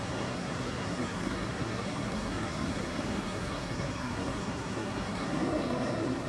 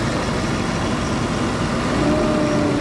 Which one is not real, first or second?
first